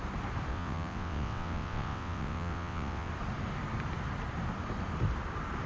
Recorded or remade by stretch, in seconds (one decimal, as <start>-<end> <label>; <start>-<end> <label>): 0.0-0.5 recorded; 0.5-3.1 remade; 3.1-5.7 recorded